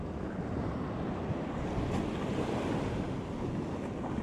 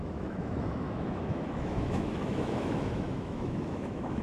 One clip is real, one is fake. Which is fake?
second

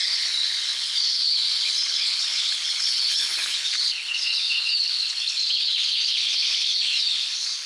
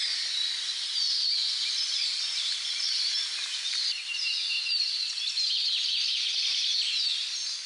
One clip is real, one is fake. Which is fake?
first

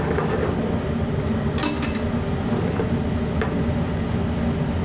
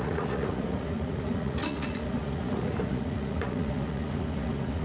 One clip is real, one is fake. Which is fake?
second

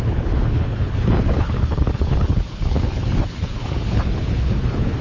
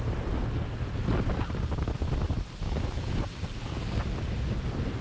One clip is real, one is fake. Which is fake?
first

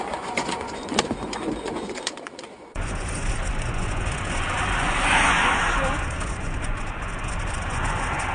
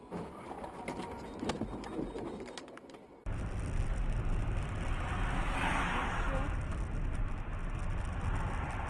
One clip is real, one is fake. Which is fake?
first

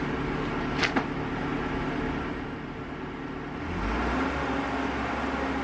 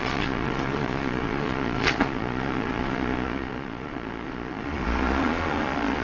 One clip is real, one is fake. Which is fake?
second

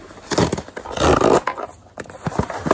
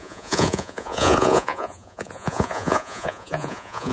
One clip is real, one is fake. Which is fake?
second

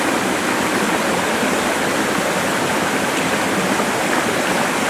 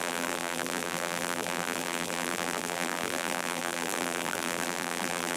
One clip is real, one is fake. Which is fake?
second